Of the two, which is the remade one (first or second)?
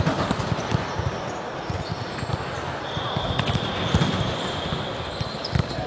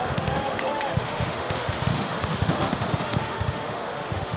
second